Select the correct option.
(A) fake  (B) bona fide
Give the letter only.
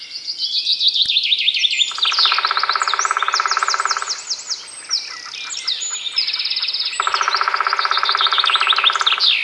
B